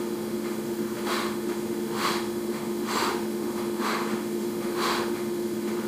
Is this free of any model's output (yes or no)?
no